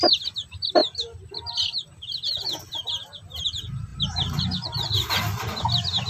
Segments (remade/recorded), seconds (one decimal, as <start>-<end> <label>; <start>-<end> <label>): 0.0-6.1 recorded